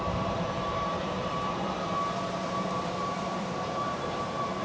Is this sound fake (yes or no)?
yes